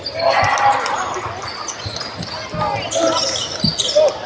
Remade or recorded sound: recorded